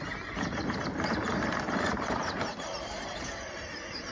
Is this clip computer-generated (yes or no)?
yes